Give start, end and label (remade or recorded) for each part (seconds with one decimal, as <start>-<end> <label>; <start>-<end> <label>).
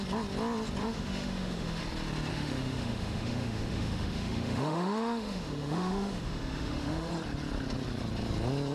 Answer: 0.0-0.8 recorded; 0.8-1.8 remade; 1.8-2.3 recorded; 2.3-7.1 remade; 7.1-8.7 recorded